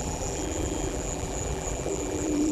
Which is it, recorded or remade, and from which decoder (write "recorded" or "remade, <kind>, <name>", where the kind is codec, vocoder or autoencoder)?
remade, vocoder, BigVGAN v2